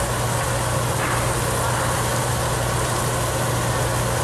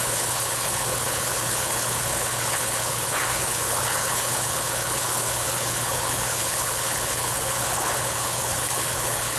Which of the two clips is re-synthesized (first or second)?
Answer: second